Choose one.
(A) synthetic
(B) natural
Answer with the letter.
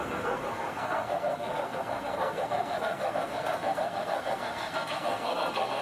A